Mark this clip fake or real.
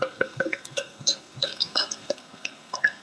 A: fake